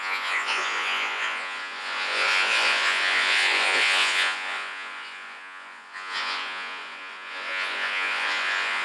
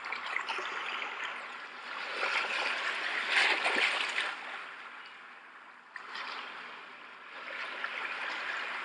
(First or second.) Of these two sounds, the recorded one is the second